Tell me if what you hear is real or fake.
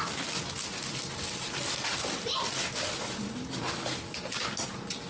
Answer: real